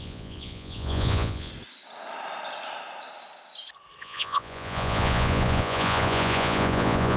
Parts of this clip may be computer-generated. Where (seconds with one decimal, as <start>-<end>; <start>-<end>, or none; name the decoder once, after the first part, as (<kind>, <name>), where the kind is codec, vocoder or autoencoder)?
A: 0.0-1.5 (vocoder, Vocos); 4.0-7.2